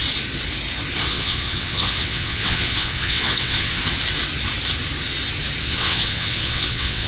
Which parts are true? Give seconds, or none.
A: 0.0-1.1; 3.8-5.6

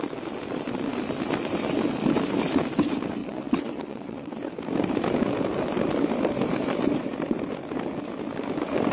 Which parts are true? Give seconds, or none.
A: 0.0-3.2; 4.3-8.9

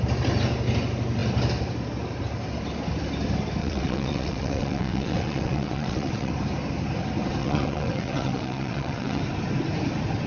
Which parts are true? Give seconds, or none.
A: 0.0-3.6; 6.3-7.4; 9.2-10.3

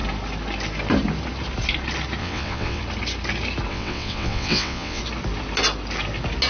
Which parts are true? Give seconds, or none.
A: 0.0-2.2; 2.8-3.7; 5.0-6.5

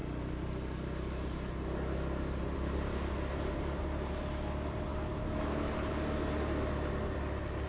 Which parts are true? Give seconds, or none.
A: 0.0-7.7